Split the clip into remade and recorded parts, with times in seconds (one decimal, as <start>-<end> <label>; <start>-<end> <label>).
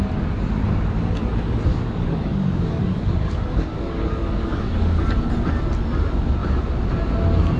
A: 0.0-1.7 recorded; 1.7-5.0 remade; 5.0-7.6 recorded